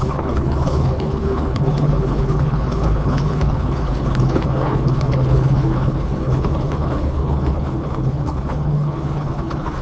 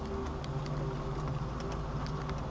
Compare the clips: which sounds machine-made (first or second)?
first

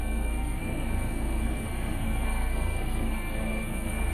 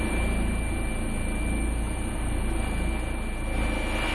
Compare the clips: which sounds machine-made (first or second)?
first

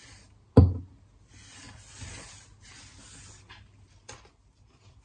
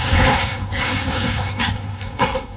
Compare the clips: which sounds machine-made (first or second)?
second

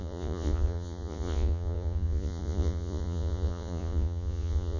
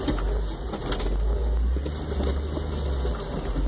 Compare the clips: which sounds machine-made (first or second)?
first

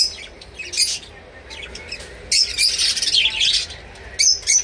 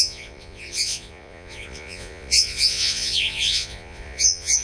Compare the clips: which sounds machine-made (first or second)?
second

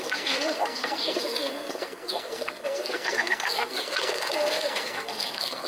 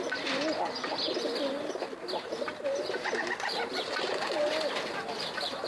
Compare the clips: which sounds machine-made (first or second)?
first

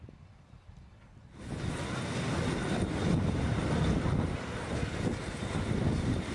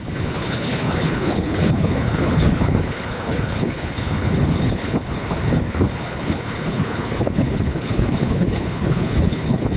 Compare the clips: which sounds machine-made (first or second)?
second